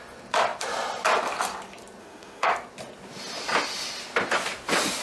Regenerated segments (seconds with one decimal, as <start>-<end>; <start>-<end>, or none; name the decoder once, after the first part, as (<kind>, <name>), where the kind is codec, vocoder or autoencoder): 2.0-2.5 (autoencoder, DAC-VAE)